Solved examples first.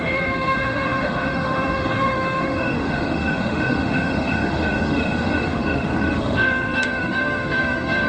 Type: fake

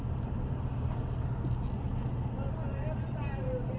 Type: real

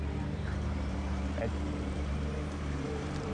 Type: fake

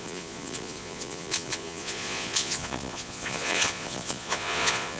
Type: fake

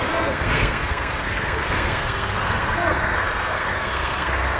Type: fake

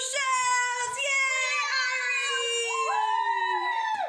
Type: real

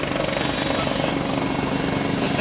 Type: real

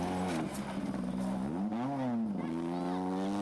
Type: real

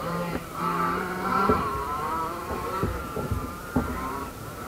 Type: fake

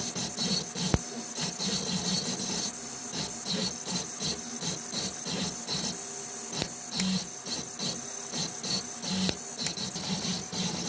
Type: real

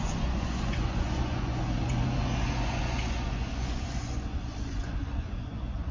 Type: fake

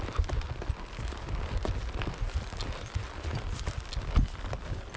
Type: real